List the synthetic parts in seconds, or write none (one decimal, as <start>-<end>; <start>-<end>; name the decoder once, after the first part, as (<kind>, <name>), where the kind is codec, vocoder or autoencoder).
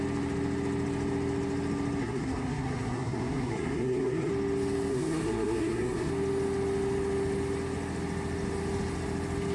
2.0-4.3 (codec, SNAC); 4.9-6.1